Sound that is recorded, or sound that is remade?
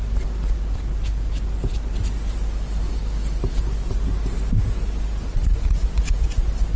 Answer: recorded